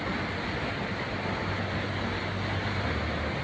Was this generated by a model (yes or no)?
no